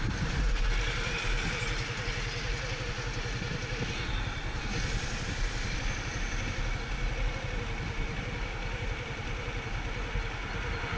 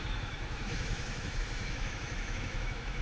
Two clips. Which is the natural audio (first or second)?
first